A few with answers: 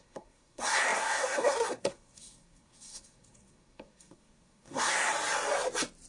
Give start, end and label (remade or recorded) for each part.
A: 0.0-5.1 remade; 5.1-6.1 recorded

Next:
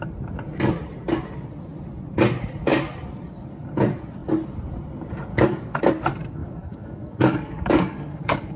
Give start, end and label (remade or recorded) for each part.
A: 0.0-5.3 recorded; 5.3-5.8 remade; 5.8-6.4 recorded; 6.4-8.6 remade

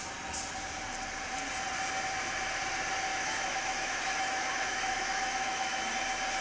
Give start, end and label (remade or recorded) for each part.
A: 0.0-3.1 recorded; 3.1-5.9 remade; 5.9-6.4 recorded

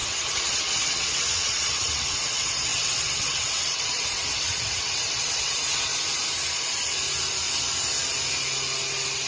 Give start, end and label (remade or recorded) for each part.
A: 0.0-5.9 remade; 5.9-9.3 recorded